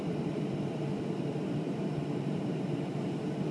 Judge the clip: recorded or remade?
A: remade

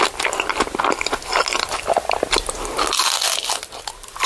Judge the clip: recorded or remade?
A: recorded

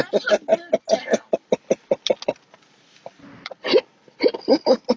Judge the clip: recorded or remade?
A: recorded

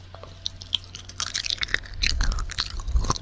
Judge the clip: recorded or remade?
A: recorded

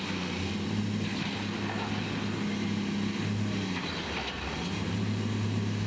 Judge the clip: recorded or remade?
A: recorded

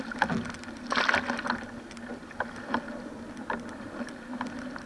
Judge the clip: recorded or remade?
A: recorded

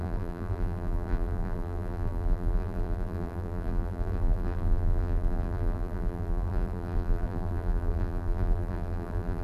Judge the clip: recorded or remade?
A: remade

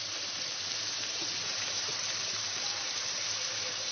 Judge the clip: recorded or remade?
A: remade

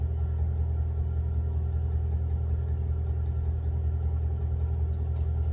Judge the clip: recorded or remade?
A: recorded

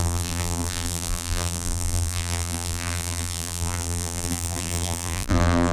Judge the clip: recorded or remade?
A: remade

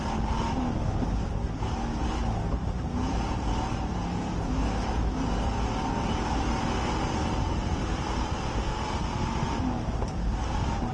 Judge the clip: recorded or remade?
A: recorded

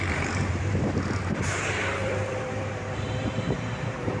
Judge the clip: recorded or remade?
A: remade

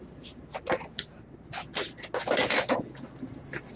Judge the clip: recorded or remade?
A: recorded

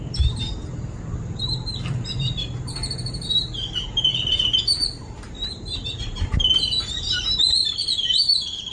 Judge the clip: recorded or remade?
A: remade